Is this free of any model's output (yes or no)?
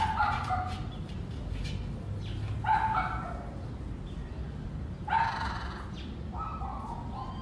yes